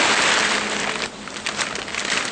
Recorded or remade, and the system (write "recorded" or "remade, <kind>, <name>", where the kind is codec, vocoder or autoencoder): recorded